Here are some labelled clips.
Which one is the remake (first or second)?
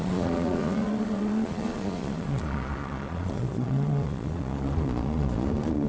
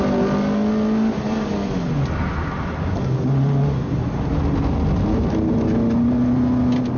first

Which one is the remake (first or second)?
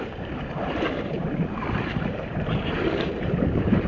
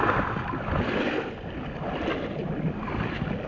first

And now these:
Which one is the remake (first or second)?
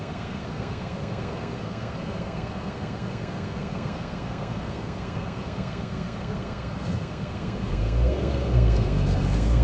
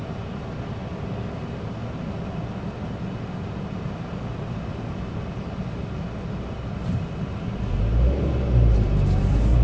first